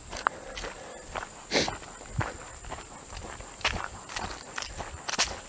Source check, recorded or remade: recorded